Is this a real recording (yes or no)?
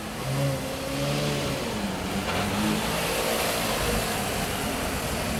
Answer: yes